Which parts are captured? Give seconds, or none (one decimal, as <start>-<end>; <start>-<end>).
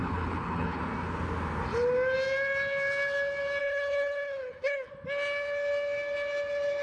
0.8-3.6; 4.9-6.8